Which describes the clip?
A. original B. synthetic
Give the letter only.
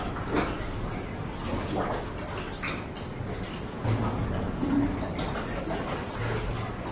A